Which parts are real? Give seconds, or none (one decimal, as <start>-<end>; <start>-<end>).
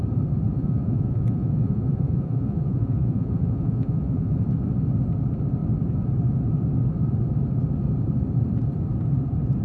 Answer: 0.0-0.5; 4.3-9.6